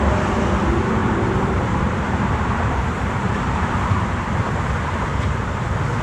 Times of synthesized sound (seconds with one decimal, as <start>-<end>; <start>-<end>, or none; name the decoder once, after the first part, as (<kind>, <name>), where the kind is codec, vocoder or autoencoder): 1.0-4.6 (vocoder, BigVGAN v2); 5.1-5.6